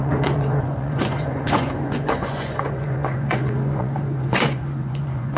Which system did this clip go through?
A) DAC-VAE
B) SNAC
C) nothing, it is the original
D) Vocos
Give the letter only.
D